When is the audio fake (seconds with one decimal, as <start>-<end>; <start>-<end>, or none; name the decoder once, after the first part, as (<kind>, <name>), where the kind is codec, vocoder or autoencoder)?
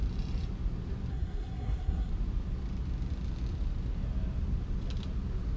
1.1-2.1 (codec, SNAC)